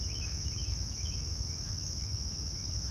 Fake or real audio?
fake